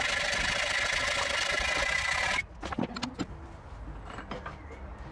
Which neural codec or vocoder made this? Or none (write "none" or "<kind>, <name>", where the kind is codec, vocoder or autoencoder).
none